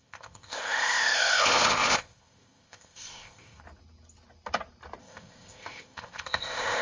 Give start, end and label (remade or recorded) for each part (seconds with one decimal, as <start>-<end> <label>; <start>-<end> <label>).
0.0-3.6 remade; 3.6-5.0 recorded; 5.0-6.8 remade